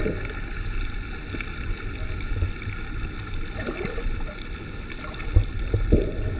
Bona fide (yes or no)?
yes